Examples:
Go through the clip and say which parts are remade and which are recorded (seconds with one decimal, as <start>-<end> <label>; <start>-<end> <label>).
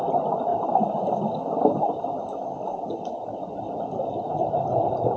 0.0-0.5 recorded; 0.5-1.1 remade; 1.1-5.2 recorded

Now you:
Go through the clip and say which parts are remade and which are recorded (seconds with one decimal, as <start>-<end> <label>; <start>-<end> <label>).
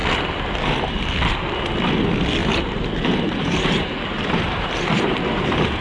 0.0-2.4 recorded; 2.4-5.8 remade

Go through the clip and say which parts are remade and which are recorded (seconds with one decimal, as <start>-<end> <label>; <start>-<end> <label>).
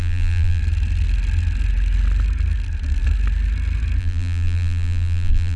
0.0-0.6 remade; 0.6-4.0 recorded; 4.0-5.6 remade